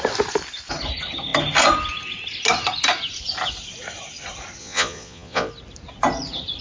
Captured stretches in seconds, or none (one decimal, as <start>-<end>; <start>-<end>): 0.0-4.6; 5.5-6.6